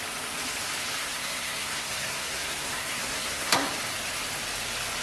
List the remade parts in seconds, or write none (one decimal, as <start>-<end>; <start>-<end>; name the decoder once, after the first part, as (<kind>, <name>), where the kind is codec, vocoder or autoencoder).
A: 1.0-3.7 (codec, SNAC)